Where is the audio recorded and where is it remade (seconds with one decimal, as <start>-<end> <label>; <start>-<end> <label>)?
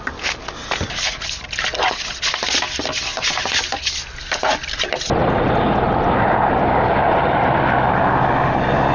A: 0.0-3.1 recorded; 3.1-3.6 remade; 3.6-5.2 recorded; 5.2-7.6 remade; 7.6-8.9 recorded